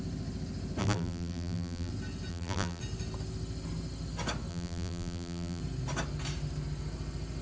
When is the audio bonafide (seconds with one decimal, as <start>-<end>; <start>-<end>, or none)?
0.0-0.8; 1.9-2.3; 2.8-4.5; 5.6-7.4